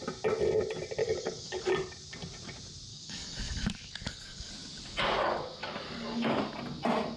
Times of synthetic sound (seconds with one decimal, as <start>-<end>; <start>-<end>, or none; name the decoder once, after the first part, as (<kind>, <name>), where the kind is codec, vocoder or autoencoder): 1.0-1.7 (codec, DAC); 2.9-4.5; 5.6-6.4